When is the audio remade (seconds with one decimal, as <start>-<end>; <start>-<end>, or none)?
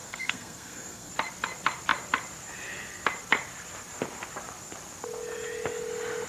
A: 0.0-1.1